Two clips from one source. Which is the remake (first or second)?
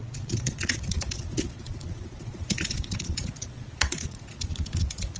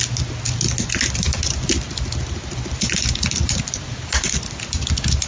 first